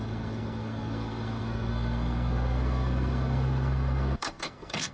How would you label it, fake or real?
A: fake